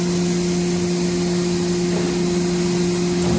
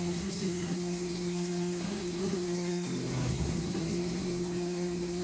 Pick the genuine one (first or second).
first